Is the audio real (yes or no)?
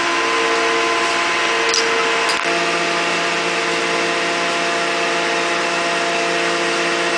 yes